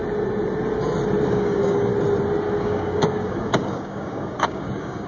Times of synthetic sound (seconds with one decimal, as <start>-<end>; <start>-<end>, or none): 1.3-1.9; 2.6-5.1